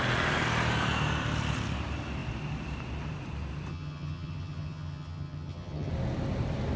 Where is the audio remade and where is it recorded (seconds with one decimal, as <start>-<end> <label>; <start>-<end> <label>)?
0.0-3.7 recorded; 3.7-5.9 remade; 5.9-6.8 recorded